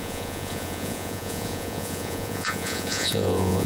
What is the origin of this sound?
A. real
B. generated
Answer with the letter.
B